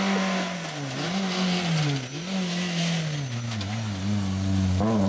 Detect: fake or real real